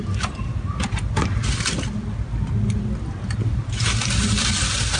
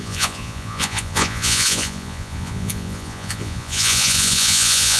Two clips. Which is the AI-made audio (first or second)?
second